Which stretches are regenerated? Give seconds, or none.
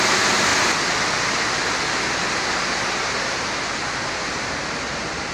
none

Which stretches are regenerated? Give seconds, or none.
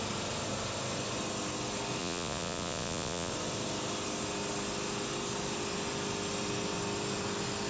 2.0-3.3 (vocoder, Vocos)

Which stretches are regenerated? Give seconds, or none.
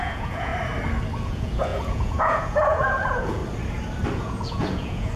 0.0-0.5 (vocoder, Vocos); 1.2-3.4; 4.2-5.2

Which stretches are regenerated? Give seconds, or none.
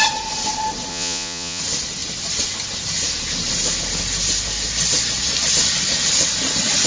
0.9-1.6 (vocoder, Vocos)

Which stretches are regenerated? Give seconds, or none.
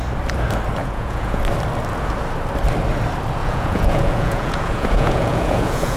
0.8-1.4 (vocoder, Vocos); 3.4-6.0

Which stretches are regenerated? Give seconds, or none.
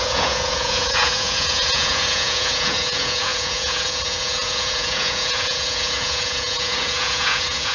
0.0-7.7 (vocoder, Vocos)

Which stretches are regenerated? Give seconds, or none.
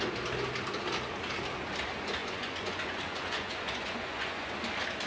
2.2-4.5 (vocoder, Vocos)